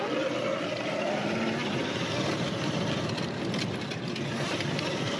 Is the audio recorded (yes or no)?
yes